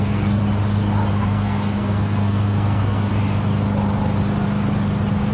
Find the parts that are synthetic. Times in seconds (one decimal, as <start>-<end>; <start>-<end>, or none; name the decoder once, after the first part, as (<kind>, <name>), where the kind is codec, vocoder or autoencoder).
0.0-0.4 (codec, SNAC); 1.1-3.1